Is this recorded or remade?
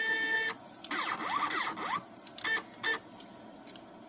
recorded